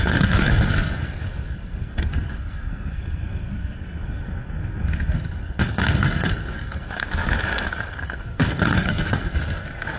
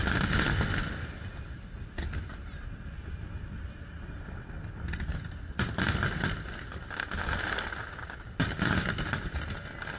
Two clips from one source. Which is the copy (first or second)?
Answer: first